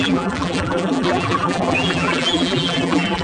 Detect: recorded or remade remade